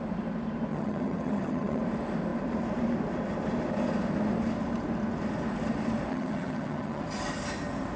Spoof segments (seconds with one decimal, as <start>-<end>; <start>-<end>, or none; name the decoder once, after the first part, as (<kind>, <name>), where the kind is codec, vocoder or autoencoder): 0.7-1.8 (vocoder, HiFi-GAN); 6.1-7.0